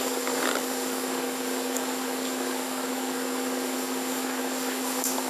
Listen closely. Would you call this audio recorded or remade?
remade